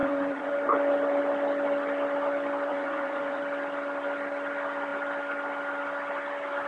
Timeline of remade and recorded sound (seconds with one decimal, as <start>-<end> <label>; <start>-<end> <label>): 0.0-0.5 remade; 0.5-2.7 recorded; 2.7-3.4 remade; 3.4-6.7 recorded

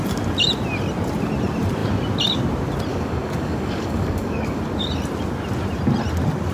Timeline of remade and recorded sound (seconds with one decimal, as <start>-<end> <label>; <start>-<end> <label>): 0.0-2.9 recorded; 2.9-4.6 remade; 4.6-6.5 recorded

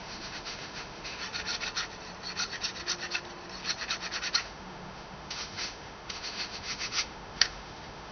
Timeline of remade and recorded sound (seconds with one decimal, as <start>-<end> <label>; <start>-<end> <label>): 0.0-1.2 remade; 1.2-4.4 recorded; 4.4-8.1 remade

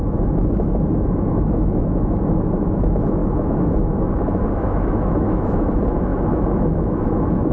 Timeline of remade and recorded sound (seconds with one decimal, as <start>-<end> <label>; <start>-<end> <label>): 0.0-7.5 remade

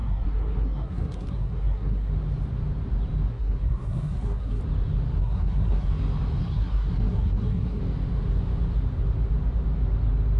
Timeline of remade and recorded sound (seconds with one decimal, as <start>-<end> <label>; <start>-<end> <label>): 0.0-2.1 remade; 2.1-3.3 recorded; 3.3-4.6 remade; 4.6-5.2 recorded; 5.2-5.9 remade; 5.9-6.4 recorded; 6.4-7.8 remade; 7.8-10.4 recorded

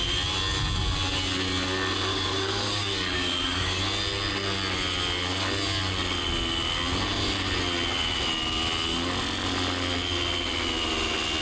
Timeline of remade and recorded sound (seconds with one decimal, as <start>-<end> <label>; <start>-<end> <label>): 0.0-2.1 recorded; 2.1-3.8 remade; 3.8-11.4 recorded

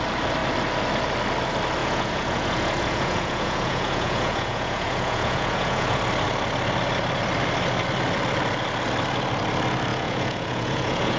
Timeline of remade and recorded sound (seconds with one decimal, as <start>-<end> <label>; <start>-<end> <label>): 0.0-1.8 recorded; 1.8-6.0 remade; 6.0-9.9 recorded; 9.9-11.2 remade